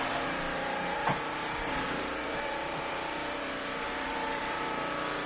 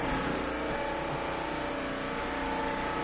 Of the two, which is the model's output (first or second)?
first